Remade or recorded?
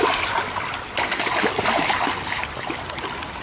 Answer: recorded